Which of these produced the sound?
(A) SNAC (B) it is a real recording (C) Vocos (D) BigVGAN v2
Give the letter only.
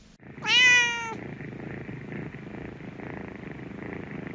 B